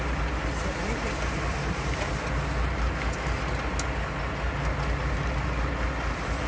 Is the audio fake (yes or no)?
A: no